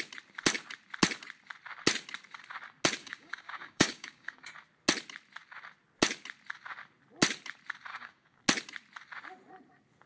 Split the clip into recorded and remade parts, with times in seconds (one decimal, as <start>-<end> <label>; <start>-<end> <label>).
0.0-3.0 recorded; 3.0-4.5 remade; 4.5-7.9 recorded; 7.9-8.4 remade; 8.4-10.1 recorded